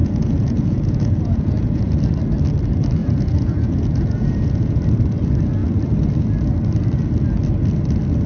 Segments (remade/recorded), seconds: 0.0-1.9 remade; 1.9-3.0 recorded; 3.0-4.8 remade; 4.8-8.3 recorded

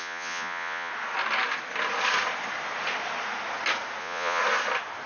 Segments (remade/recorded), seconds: 0.0-0.9 remade; 0.9-4.0 recorded; 4.0-4.4 remade; 4.4-5.1 recorded

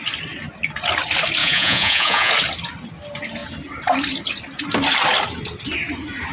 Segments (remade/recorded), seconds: 0.0-1.4 recorded; 1.4-2.3 remade; 2.3-6.3 recorded

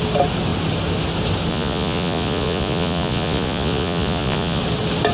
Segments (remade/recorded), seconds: 0.0-1.5 recorded; 1.5-4.6 remade; 4.6-5.1 recorded

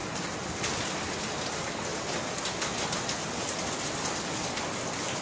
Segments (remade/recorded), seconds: 0.0-5.2 recorded